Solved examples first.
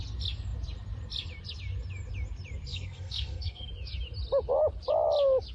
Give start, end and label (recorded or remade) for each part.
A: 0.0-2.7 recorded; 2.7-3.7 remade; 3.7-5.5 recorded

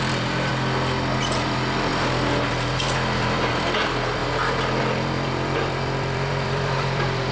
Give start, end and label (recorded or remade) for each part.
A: 0.0-0.5 remade; 0.5-1.2 recorded; 1.2-1.9 remade; 1.9-2.5 recorded; 2.5-4.2 remade; 4.2-4.8 recorded; 4.8-7.3 remade

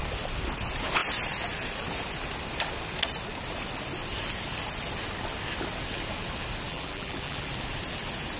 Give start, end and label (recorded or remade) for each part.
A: 0.0-6.7 recorded; 6.7-7.5 remade; 7.5-8.4 recorded

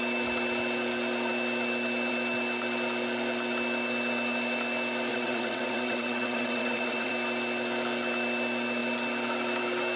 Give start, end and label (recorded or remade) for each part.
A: 0.0-5.1 recorded; 5.1-7.1 remade; 7.1-10.0 recorded

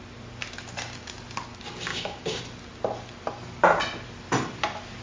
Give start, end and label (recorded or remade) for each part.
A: 0.0-1.9 recorded; 1.9-2.4 remade; 2.4-5.0 recorded

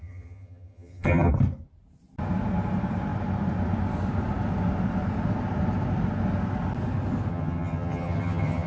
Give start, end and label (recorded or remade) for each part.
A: 0.0-1.3 remade; 1.3-7.3 recorded; 7.3-8.7 remade